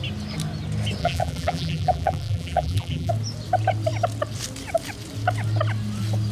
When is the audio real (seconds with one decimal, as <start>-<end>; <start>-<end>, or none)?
0.0-1.0; 3.1-6.3